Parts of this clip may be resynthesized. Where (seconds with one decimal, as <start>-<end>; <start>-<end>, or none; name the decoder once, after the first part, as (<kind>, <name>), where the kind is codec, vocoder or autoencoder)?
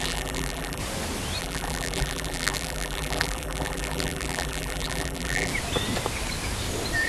0.0-0.8 (vocoder, BigVGAN v2); 1.4-5.5